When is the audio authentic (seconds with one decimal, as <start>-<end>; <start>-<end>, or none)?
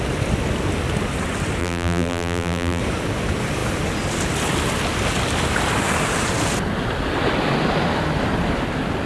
0.0-1.6; 2.8-9.1